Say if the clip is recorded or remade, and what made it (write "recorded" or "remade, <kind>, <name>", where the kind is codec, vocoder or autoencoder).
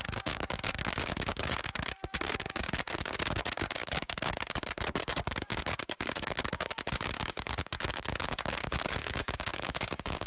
remade, codec, DAC